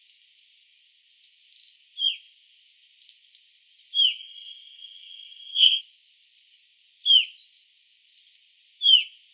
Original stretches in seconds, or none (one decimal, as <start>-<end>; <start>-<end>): 0.0-4.2; 5.8-9.3

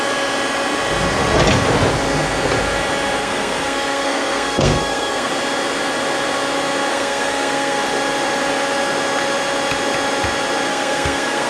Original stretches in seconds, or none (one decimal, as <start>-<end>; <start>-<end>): 0.0-3.2; 5.3-6.9; 7.8-10.7

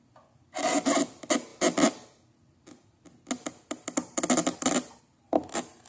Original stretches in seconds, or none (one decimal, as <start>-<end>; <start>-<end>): 0.0-5.9

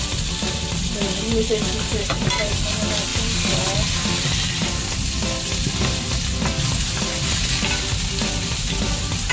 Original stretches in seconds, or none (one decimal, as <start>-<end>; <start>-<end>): 0.0-9.3